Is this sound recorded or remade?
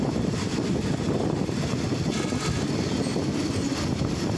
recorded